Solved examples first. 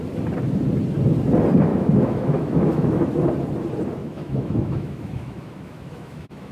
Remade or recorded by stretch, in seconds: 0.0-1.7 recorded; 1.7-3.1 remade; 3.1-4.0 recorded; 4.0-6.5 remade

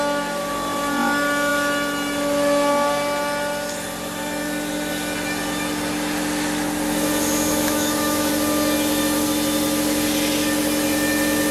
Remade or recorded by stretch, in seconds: 0.0-7.5 recorded; 7.5-8.3 remade; 8.3-11.5 recorded